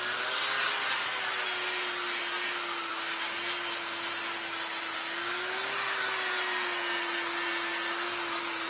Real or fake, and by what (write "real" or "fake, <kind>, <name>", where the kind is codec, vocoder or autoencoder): real